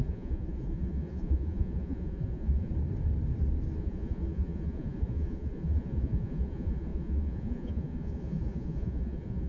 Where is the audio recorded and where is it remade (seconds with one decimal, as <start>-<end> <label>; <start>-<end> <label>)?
0.0-2.7 remade; 2.7-3.8 recorded; 3.8-9.5 remade